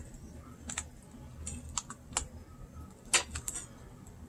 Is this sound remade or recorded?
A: recorded